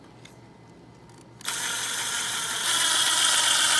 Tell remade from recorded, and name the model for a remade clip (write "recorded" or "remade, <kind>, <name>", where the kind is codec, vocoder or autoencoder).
recorded